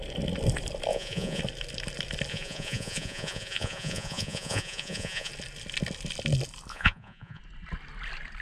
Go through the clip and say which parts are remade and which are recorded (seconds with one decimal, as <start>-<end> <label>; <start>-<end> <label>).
0.0-0.9 recorded; 0.9-1.4 remade; 1.4-2.3 recorded; 2.3-5.3 remade; 5.3-6.7 recorded; 6.7-7.4 remade; 7.4-8.4 recorded